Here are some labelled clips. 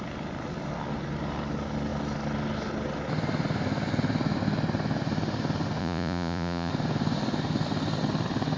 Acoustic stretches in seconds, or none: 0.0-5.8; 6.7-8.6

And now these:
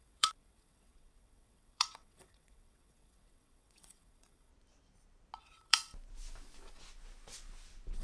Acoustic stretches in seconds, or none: 4.5-5.4; 5.9-8.0

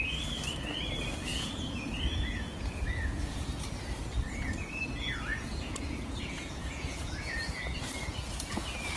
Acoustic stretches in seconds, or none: 0.0-1.3; 4.8-5.3; 7.9-9.0

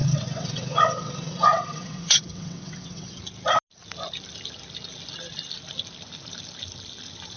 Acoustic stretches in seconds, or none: 3.2-7.4

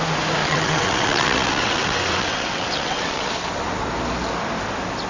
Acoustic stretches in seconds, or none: 0.0-0.4; 3.3-5.1